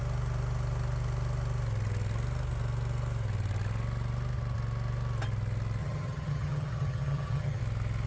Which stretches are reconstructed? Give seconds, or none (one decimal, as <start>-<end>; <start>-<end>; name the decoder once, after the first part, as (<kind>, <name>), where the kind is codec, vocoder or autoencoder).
5.8-7.6 (vocoder, HiFi-GAN)